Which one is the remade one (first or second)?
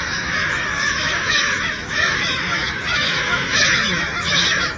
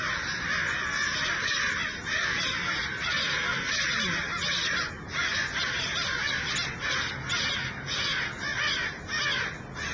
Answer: first